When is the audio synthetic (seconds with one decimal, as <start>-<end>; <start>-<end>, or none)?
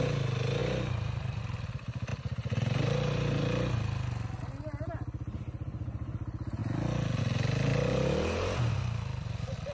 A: 0.6-1.4; 2.1-3.4; 7.7-8.7